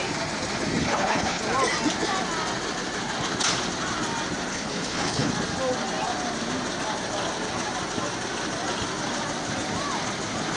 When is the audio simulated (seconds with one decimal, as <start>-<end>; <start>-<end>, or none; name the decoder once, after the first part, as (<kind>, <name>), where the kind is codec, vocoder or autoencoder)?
0.8-1.4 (codec, HILCodec); 4.5-5.3